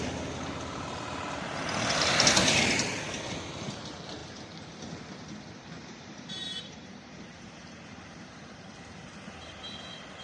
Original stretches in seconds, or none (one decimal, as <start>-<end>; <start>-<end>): 0.0-5.8; 9.5-10.2